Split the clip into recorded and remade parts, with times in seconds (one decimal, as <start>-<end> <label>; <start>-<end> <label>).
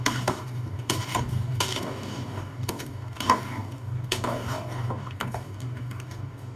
0.0-6.6 remade